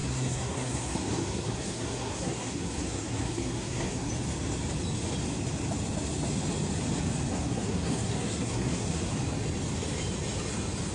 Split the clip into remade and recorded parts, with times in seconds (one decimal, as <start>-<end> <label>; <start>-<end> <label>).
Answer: 0.0-4.1 remade; 4.1-7.3 recorded; 7.3-9.1 remade; 9.1-10.9 recorded

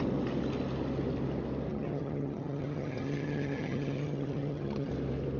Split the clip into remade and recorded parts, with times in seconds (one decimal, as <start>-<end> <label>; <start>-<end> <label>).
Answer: 0.0-1.7 recorded; 1.7-4.9 remade; 4.9-5.4 recorded

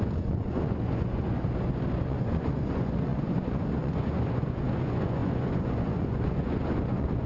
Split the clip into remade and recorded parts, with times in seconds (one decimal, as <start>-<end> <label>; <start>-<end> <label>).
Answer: 0.0-7.3 remade

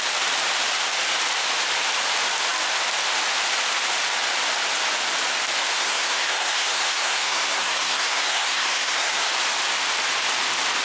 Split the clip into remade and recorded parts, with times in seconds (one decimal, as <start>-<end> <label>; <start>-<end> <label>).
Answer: 0.0-5.7 recorded; 5.7-9.3 remade; 9.3-10.8 recorded